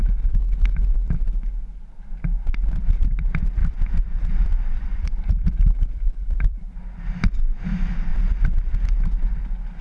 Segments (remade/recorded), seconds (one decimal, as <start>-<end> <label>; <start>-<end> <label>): 0.0-3.6 recorded; 3.6-6.6 remade; 6.6-8.1 recorded; 8.1-8.7 remade; 8.7-9.8 recorded